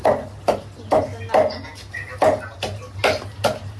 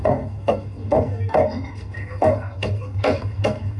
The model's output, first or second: second